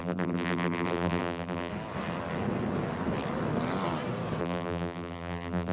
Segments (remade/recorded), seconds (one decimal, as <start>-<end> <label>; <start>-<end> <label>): 0.0-1.7 remade; 1.7-4.4 recorded; 4.4-5.7 remade